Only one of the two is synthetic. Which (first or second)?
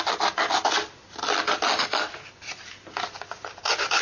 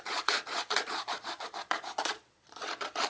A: second